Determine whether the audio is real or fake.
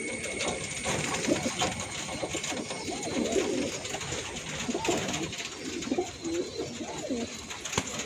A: real